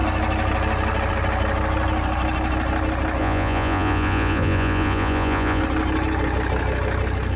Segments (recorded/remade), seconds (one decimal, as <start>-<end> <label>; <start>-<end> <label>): 0.0-3.2 recorded; 3.2-5.6 remade; 5.6-7.4 recorded